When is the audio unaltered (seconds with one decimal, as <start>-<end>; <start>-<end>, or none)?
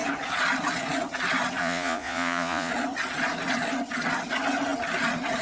0.0-1.6; 2.7-5.4